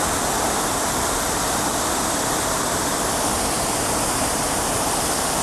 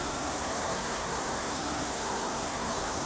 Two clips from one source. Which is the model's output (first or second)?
second